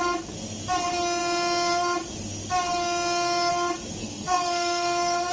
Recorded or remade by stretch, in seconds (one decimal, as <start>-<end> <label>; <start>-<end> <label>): 0.0-4.0 recorded; 4.0-5.3 remade

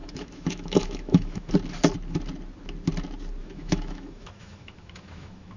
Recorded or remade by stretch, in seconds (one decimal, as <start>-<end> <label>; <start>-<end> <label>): 0.0-1.5 remade; 1.5-3.4 recorded; 3.4-5.6 remade

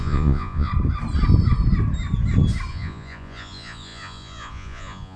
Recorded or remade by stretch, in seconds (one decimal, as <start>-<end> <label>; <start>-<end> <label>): 0.0-0.7 remade; 0.7-2.7 recorded; 2.7-5.2 remade

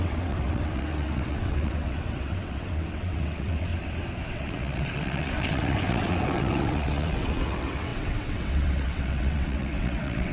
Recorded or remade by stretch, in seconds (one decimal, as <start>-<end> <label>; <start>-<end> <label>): 0.0-3.7 remade; 3.7-4.3 recorded; 4.3-10.3 remade

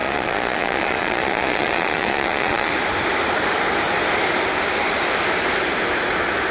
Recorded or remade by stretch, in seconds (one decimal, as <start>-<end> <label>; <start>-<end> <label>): 0.0-2.7 remade; 2.7-6.5 recorded

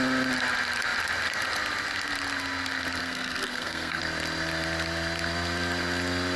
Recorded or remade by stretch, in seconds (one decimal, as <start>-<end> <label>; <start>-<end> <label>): 0.0-3.0 recorded; 3.0-4.0 remade; 4.0-6.4 recorded

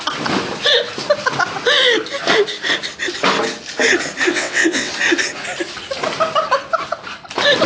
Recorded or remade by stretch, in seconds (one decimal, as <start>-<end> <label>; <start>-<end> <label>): 0.0-4.3 recorded; 4.3-4.9 remade; 4.9-7.7 recorded